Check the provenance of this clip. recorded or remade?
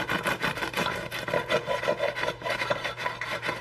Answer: recorded